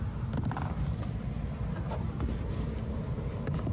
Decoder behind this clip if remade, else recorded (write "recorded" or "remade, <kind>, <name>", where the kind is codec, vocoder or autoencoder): recorded